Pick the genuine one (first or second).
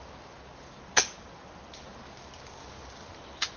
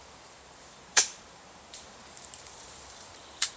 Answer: first